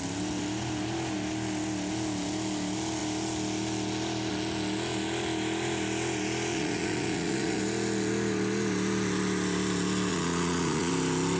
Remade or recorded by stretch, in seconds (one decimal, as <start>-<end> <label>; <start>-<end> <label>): 0.0-6.5 recorded; 6.5-7.6 remade; 7.6-10.1 recorded; 10.1-10.9 remade; 10.9-11.4 recorded